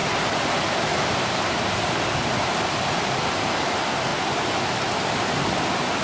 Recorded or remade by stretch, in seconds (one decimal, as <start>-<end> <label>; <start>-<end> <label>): 0.0-6.0 recorded